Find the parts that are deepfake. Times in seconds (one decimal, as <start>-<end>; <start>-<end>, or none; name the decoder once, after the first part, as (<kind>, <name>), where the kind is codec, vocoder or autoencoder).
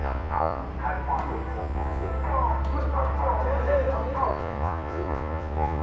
0.0-0.6 (vocoder, Vocos); 1.6-2.1; 4.3-5.8